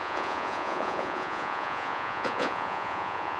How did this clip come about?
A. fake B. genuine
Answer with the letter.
A